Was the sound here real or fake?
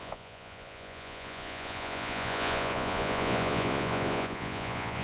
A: fake